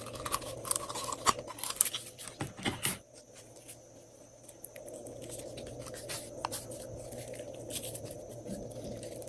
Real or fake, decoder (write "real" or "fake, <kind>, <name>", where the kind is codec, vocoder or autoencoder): real